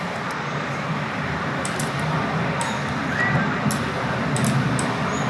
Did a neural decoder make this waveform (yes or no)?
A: no